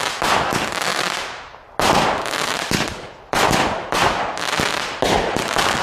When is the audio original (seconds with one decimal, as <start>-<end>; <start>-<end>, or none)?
0.0-5.8